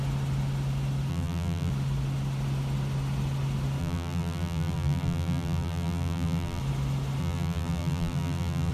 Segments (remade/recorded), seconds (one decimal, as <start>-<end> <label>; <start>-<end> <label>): 0.0-1.1 recorded; 1.1-1.7 remade; 1.7-3.8 recorded; 3.8-6.6 remade; 6.6-7.2 recorded; 7.2-8.7 remade